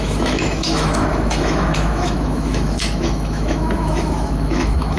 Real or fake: fake